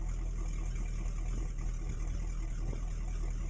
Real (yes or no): yes